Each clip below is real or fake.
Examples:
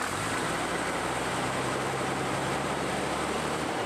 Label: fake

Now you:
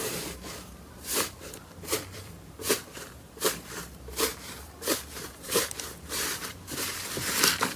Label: fake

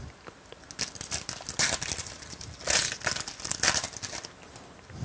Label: real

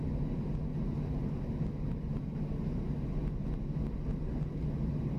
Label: real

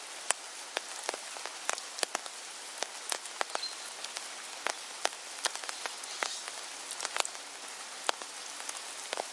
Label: real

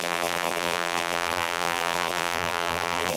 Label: fake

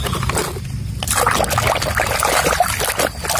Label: real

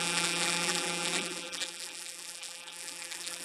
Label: fake